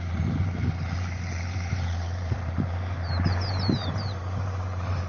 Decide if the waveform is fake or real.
fake